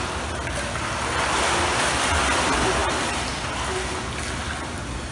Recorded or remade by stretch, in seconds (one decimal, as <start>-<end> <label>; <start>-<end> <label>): 0.0-5.1 recorded